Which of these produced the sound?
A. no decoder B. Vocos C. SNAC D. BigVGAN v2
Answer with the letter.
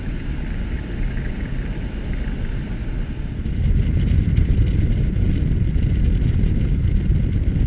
A